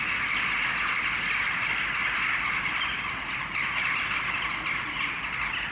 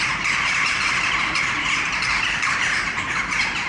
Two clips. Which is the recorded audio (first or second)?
first